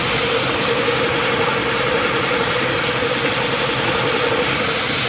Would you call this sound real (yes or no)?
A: yes